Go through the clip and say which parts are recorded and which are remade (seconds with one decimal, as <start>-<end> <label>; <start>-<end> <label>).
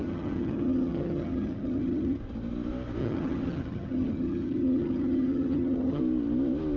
0.0-2.2 remade; 2.2-3.0 recorded; 3.0-6.0 remade; 6.0-6.8 recorded